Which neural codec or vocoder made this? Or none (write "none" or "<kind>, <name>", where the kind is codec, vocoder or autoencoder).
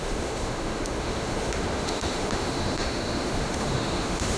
autoencoder, DAC-VAE